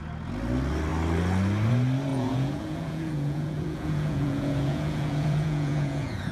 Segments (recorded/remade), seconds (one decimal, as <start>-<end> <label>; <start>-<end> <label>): 0.0-2.1 recorded; 2.1-6.3 remade